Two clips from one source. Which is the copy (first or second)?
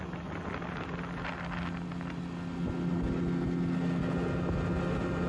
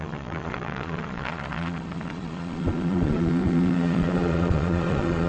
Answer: second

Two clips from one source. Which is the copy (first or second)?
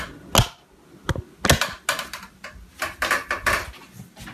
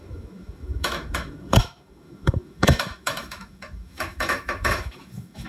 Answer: second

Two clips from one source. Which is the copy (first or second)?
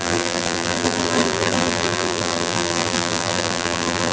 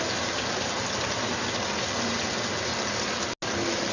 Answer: first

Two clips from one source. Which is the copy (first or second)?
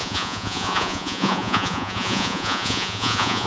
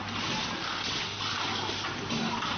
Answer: first